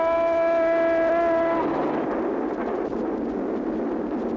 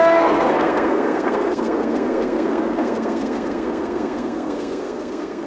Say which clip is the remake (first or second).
second